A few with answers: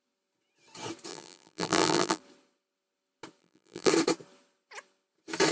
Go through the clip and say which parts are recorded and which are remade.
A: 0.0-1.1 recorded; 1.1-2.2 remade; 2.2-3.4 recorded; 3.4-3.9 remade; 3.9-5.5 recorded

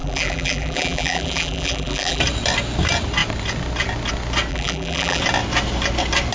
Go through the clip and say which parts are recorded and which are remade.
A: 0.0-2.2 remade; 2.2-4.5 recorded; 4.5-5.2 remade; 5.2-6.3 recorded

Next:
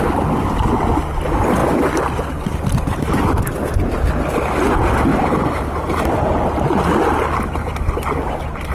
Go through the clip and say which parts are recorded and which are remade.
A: 0.0-5.1 recorded; 5.1-6.2 remade; 6.2-8.7 recorded